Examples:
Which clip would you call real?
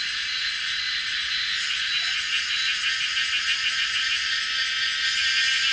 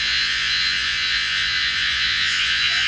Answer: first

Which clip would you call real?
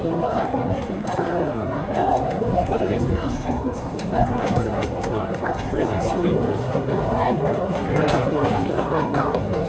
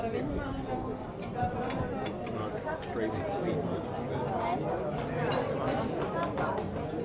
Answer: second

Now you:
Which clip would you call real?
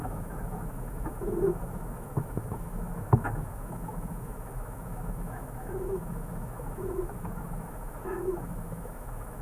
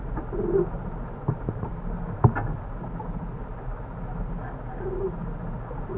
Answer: second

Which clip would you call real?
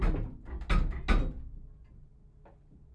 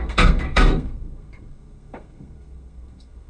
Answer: first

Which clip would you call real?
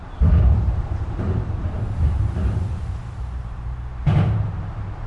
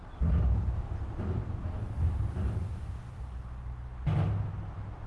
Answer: second